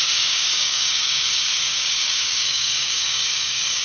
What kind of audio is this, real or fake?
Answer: fake